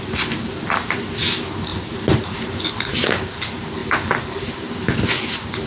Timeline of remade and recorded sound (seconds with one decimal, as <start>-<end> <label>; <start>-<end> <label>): 0.0-1.7 recorded; 1.7-3.1 remade; 3.1-5.7 recorded